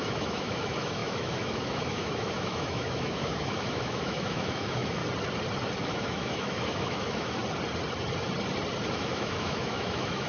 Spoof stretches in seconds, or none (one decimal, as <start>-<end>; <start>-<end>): 0.0-5.0; 5.8-7.4; 8.9-10.3